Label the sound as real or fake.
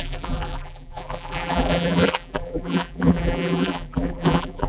fake